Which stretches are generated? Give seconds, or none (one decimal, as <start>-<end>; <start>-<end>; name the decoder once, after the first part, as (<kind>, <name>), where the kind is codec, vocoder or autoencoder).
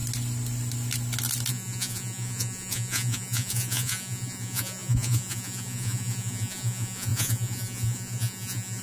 1.5-8.8 (vocoder, Vocos)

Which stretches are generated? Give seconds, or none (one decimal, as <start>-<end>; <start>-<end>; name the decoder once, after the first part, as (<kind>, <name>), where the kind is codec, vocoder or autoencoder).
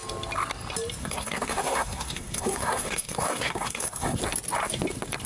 1.0-4.2 (codec, SNAC)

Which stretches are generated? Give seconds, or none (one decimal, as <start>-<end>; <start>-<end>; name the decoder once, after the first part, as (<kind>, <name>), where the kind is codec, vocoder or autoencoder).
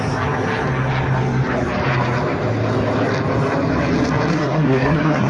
4.3-5.3 (codec, SNAC)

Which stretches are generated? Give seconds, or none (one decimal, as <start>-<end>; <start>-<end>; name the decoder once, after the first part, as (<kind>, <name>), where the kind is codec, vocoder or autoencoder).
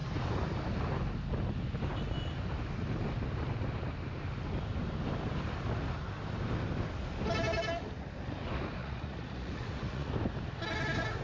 8.8-10.1 (vocoder, Vocos)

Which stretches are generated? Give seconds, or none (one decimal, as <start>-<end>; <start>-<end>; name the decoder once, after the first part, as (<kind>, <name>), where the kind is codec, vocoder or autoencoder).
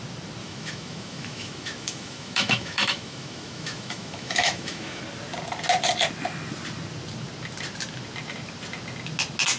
0.4-5.0 (autoencoder, DAC-VAE)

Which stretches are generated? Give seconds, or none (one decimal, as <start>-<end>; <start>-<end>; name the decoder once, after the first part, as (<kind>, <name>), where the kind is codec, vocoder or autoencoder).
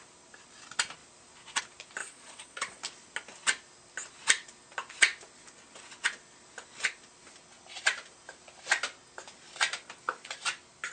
2.0-2.8 (vocoder, Vocos)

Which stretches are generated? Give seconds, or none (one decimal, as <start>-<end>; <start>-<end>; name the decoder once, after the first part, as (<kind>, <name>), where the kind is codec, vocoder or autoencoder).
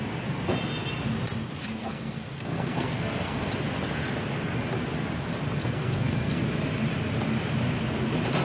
1.8-3.5 (codec, SNAC); 5.6-6.4